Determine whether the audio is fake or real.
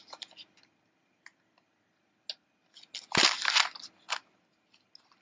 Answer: real